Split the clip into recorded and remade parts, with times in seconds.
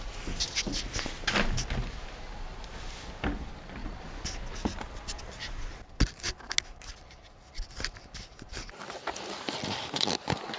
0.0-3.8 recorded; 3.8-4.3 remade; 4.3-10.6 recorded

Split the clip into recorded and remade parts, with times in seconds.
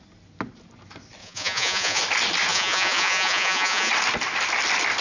0.0-1.2 recorded; 1.2-2.0 remade; 2.0-2.5 recorded; 2.5-3.9 remade; 3.9-5.0 recorded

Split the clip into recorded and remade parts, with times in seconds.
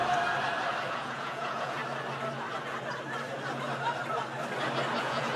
0.0-0.9 recorded; 0.9-1.8 remade; 1.8-5.0 recorded; 5.0-5.4 remade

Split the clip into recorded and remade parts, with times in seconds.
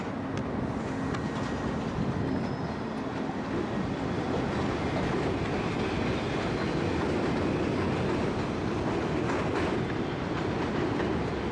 0.0-11.5 recorded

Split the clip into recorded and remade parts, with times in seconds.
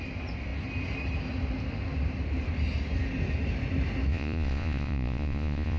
0.0-4.1 recorded; 4.1-5.8 remade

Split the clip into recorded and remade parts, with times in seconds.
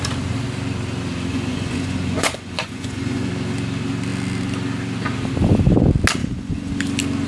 0.0-1.3 recorded; 1.3-3.3 remade; 3.3-6.2 recorded; 6.2-6.7 remade; 6.7-7.3 recorded